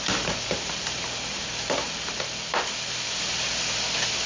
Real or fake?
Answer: fake